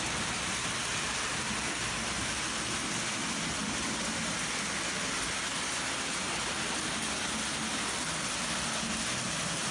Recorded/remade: recorded